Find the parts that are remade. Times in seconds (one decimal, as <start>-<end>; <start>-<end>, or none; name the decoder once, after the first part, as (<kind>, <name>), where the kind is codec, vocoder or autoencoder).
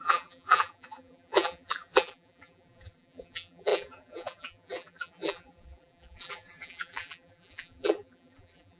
0.0-8.8 (vocoder, BigVGAN v2)